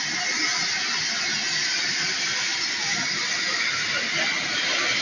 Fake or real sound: real